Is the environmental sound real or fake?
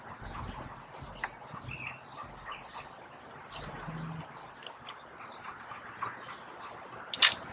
real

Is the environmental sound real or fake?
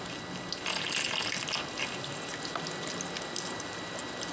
real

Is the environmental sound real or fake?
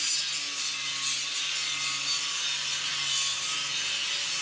real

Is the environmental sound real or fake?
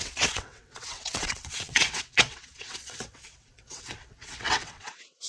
fake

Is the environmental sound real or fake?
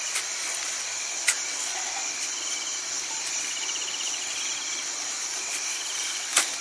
real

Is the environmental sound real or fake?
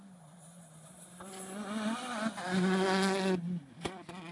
real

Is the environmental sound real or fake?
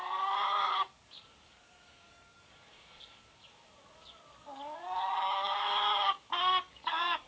fake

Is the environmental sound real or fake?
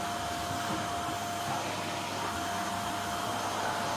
real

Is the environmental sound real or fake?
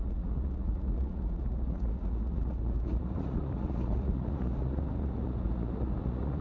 fake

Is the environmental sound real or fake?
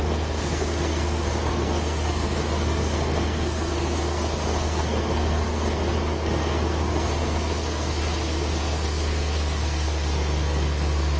fake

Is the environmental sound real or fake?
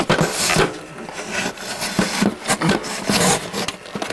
real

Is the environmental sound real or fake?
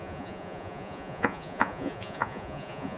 fake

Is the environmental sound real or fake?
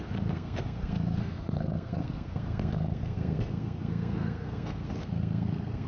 fake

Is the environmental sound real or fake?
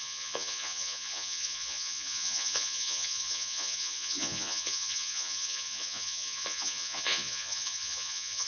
fake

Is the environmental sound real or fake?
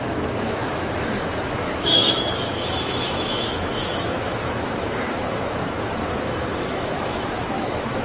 fake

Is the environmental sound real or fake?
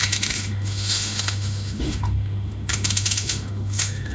fake